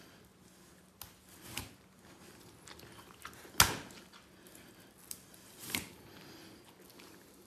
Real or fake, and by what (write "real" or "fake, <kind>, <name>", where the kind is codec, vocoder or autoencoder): real